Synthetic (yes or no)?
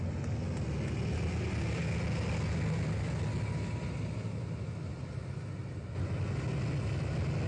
no